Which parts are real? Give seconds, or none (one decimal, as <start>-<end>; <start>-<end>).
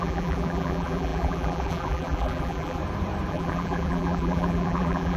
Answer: 2.8-3.3